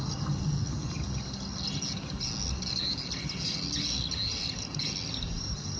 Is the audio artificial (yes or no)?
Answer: no